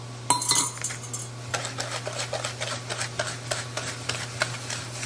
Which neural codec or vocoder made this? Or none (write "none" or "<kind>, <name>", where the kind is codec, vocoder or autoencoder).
none